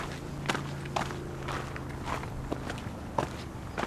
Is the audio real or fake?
real